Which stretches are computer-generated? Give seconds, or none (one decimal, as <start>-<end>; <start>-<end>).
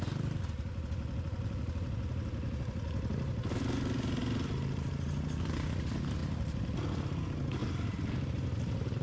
none